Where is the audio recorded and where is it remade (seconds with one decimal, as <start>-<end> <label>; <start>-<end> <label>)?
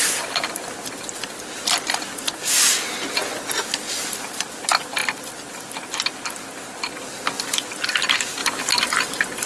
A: 0.0-9.5 recorded